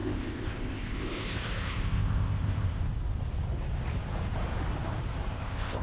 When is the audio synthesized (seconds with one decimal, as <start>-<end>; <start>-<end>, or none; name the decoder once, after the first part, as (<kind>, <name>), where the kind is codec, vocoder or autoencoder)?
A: 0.0-2.8 (codec, ZipCodec); 5.3-5.8